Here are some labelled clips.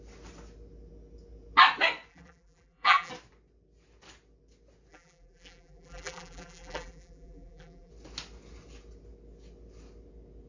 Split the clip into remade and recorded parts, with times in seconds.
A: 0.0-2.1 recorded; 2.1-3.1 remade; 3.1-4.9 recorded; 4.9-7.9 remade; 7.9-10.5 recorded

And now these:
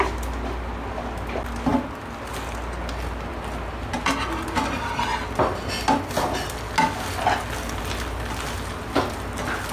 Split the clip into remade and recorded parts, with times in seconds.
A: 0.0-9.7 recorded